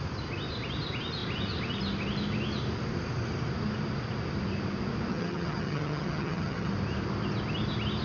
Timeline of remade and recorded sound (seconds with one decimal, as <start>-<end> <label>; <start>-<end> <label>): 0.0-5.1 recorded; 5.1-6.7 remade; 6.7-8.0 recorded